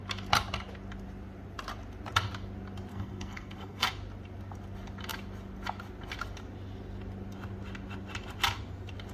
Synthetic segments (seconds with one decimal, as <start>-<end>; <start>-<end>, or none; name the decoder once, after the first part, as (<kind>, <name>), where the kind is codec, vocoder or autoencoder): 2.9-3.9 (codec, SNAC)